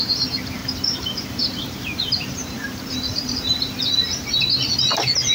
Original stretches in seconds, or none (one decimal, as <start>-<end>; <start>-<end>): 0.0-0.6; 3.8-5.3